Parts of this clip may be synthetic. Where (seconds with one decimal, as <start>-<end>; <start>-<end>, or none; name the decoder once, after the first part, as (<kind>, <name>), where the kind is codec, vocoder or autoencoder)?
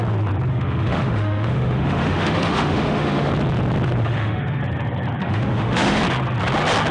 0.5-3.3 (autoencoder, DAC-VAE); 4.0-4.6; 5.2-6.0